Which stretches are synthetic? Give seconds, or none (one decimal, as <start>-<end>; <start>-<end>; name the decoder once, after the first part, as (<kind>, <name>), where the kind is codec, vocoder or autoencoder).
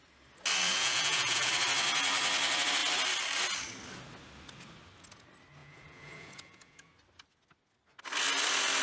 0.7-1.5 (vocoder, Vocos); 5.6-6.9